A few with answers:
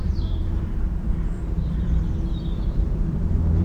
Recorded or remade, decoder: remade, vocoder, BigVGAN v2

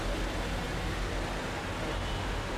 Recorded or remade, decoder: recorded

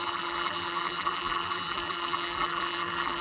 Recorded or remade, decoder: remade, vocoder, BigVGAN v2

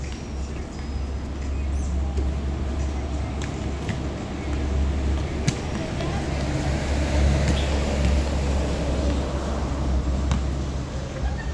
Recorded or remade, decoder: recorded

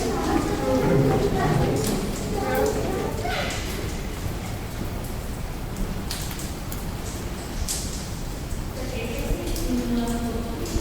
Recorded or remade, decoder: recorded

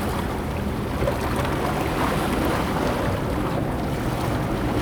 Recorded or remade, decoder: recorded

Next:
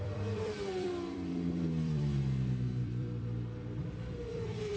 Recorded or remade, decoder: remade, vocoder, BigVGAN v2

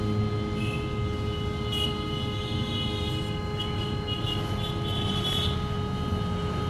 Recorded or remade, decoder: recorded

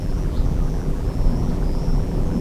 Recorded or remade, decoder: remade, vocoder, BigVGAN v2